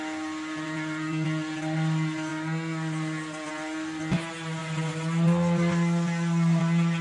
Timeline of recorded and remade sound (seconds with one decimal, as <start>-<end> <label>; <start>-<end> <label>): 0.0-7.0 recorded